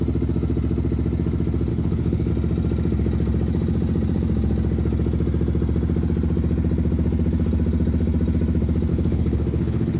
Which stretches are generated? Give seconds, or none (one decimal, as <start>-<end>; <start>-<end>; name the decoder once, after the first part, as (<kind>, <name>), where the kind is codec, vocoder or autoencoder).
1.7-2.3 (codec, HILCodec); 8.9-10.0